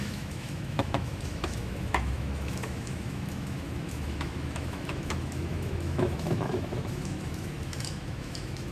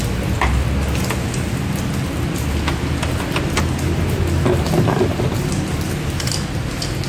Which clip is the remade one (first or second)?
first